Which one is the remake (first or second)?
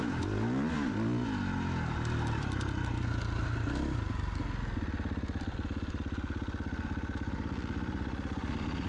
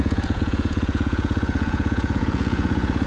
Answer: second